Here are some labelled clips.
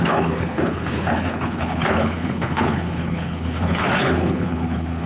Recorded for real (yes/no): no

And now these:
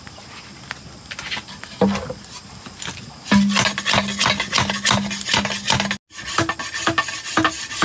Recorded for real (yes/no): yes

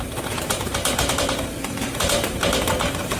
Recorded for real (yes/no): no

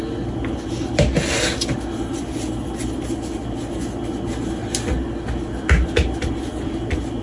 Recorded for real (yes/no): yes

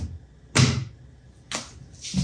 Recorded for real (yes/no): yes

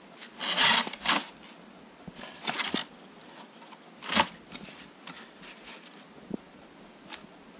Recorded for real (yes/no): yes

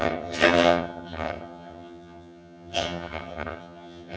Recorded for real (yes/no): no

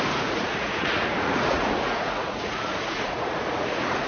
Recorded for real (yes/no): no